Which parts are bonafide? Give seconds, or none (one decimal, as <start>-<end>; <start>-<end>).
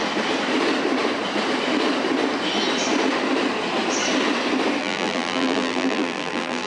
0.0-4.8